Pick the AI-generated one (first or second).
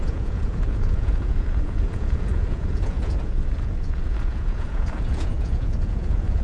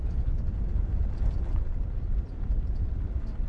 first